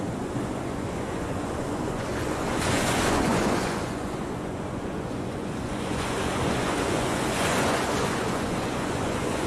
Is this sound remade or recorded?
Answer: remade